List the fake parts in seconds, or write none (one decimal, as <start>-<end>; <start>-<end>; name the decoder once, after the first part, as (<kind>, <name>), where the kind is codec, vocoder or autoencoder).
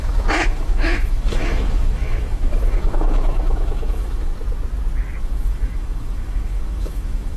0.0-4.3 (autoencoder, DAC-VAE); 5.2-7.4